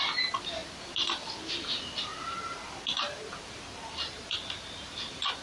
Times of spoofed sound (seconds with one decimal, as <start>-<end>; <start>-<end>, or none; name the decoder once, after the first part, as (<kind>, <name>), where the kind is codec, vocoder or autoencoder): 0.6-1.3 (vocoder, BigVGAN v2); 2.1-5.4